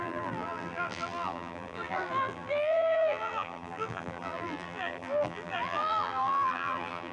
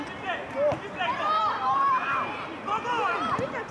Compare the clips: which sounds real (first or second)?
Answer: second